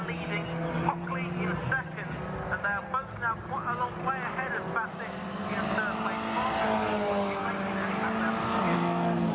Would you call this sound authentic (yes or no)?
yes